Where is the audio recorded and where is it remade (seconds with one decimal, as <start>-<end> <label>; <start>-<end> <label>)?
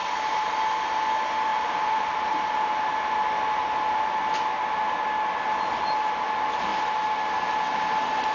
0.0-0.6 remade; 0.6-1.5 recorded; 1.5-4.0 remade; 4.0-6.7 recorded; 6.7-7.5 remade; 7.5-8.3 recorded